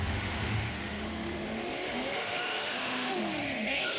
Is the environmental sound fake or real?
fake